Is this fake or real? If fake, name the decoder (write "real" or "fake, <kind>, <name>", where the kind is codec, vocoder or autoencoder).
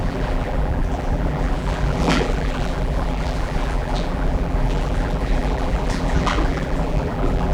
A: fake, vocoder, BigVGAN v2